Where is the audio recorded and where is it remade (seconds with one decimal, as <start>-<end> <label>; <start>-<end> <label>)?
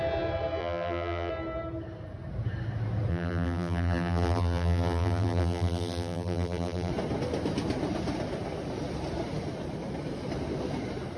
0.0-0.6 recorded; 0.6-1.3 remade; 1.3-3.1 recorded; 3.1-6.9 remade; 6.9-11.2 recorded